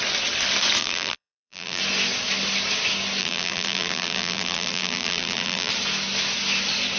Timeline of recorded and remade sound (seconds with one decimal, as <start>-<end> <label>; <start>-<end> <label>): 0.0-0.8 recorded; 0.8-1.8 remade; 1.8-3.2 recorded; 3.2-5.7 remade; 5.7-7.0 recorded